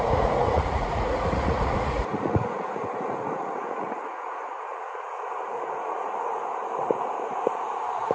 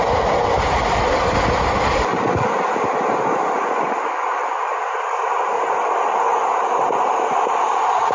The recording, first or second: second